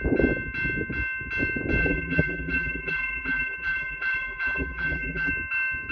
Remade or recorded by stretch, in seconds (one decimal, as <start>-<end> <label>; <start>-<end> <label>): 0.0-1.8 recorded; 1.8-5.3 remade; 5.3-5.9 recorded